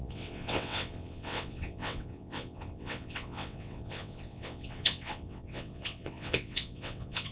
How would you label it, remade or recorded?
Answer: remade